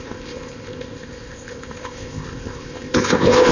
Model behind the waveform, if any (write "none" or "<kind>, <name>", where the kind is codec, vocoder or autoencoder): codec, ZipCodec